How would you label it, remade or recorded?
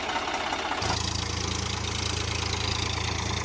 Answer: recorded